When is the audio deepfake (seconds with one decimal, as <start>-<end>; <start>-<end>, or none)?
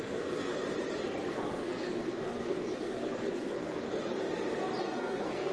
0.0-0.5; 1.3-4.1; 4.8-5.5